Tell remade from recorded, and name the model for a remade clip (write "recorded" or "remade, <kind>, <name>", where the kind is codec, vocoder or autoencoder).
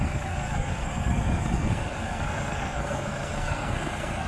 remade, codec, SNAC